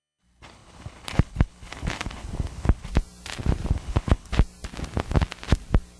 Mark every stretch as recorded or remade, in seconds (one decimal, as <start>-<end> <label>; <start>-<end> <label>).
0.0-2.9 remade; 2.9-3.7 recorded; 3.7-4.3 remade; 4.3-6.0 recorded

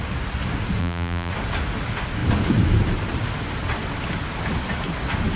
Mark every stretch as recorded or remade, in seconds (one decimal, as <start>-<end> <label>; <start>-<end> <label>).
0.0-0.8 recorded; 0.8-1.3 remade; 1.3-5.4 recorded

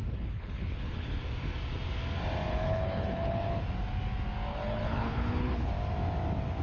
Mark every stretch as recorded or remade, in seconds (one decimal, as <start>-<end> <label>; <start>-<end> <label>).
0.0-1.2 remade; 1.2-2.5 recorded; 2.5-3.6 remade; 3.6-4.5 recorded; 4.5-5.7 remade; 5.7-6.6 recorded

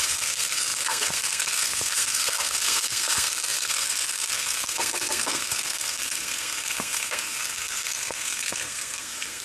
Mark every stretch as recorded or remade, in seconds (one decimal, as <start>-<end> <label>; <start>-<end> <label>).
0.0-9.4 remade